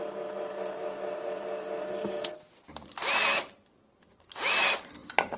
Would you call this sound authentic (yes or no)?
yes